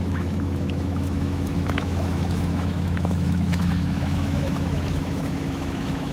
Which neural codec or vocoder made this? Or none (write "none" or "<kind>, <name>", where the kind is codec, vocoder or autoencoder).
autoencoder, DAC-VAE